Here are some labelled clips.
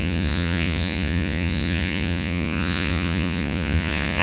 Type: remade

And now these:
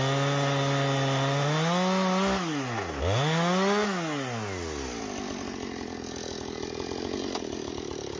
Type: recorded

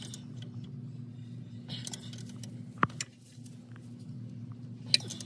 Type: recorded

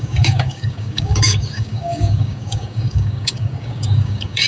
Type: remade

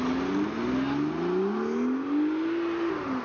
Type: recorded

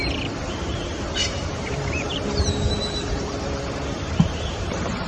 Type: remade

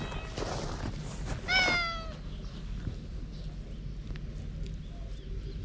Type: recorded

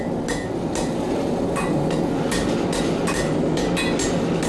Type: recorded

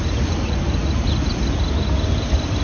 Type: recorded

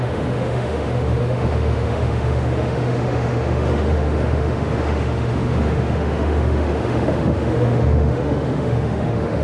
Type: remade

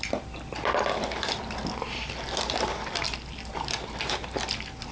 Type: recorded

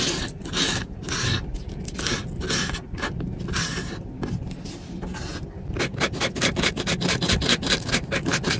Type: recorded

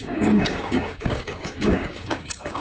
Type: remade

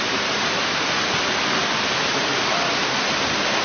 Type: recorded